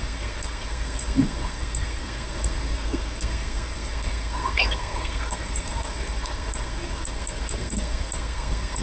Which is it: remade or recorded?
remade